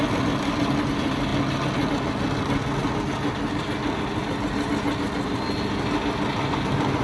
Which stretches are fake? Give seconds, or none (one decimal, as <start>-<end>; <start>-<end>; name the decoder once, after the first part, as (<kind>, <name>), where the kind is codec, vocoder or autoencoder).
none